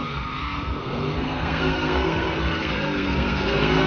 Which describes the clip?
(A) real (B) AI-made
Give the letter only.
B